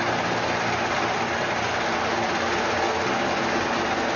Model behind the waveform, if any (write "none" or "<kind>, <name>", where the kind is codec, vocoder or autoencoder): none